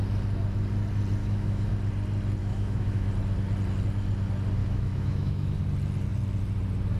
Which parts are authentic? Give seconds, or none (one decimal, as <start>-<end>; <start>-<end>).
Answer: 0.0-1.2; 1.7-2.4; 3.1-4.6; 5.6-7.0